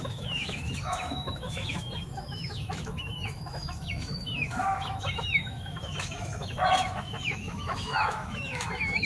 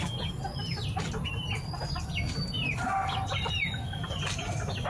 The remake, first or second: first